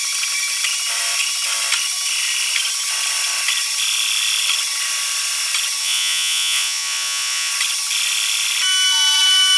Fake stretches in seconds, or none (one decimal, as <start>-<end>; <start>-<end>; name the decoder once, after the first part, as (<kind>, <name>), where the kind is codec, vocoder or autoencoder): 5.8-7.5 (vocoder, Vocos)